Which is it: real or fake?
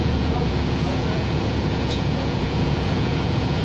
fake